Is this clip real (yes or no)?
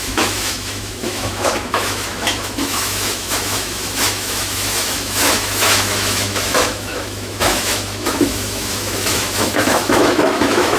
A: no